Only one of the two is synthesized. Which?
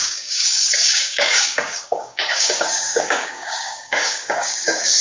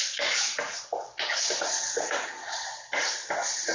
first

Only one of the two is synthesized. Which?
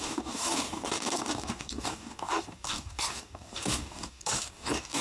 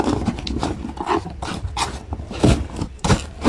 first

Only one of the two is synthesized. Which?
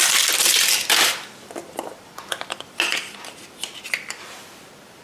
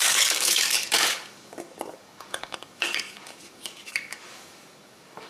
second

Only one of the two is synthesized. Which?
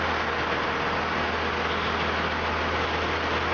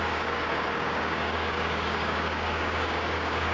second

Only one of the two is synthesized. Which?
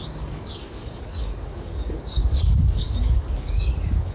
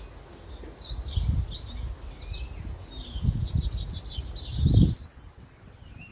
first